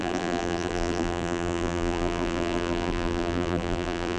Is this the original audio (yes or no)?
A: no